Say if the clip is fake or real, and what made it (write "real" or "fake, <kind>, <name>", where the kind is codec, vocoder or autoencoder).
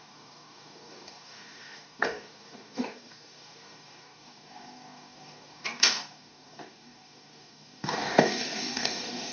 fake, codec, DAC